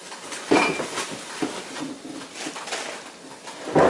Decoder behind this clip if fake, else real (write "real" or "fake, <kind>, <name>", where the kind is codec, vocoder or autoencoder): real